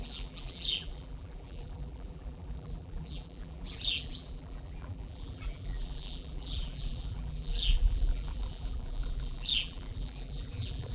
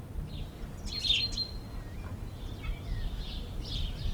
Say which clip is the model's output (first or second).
first